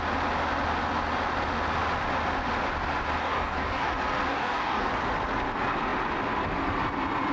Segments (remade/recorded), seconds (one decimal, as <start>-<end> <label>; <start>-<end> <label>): 0.0-3.2 recorded; 3.2-3.9 remade; 3.9-4.3 recorded; 4.3-4.9 remade; 4.9-7.3 recorded